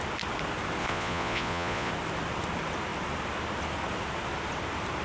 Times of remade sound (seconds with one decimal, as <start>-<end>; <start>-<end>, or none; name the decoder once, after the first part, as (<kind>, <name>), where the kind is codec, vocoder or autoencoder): 0.8-1.9 (vocoder, Vocos)